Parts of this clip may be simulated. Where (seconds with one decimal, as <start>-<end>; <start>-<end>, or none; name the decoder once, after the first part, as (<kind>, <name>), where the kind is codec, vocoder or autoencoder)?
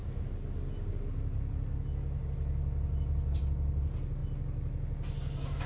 none